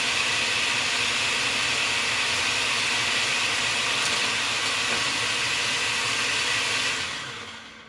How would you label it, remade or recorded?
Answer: recorded